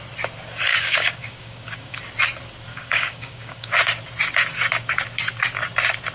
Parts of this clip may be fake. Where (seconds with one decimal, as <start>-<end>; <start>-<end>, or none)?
0.7-2.0; 2.7-3.7